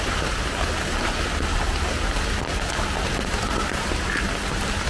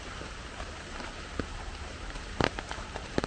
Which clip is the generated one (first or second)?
second